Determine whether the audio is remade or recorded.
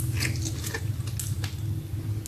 recorded